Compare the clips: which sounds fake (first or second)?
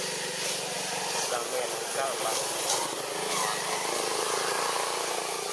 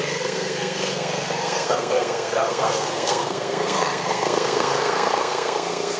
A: second